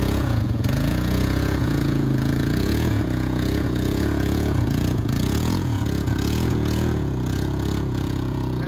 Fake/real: fake